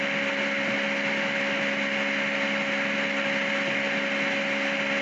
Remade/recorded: recorded